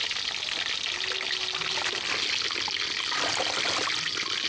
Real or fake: real